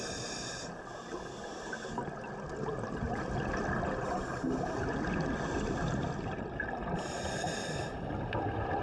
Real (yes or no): yes